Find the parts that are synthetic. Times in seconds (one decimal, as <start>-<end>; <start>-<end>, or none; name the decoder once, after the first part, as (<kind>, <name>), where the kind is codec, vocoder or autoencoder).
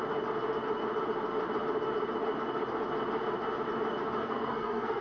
4.2-5.0 (codec, SNAC)